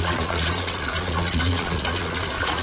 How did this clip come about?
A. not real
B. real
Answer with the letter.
A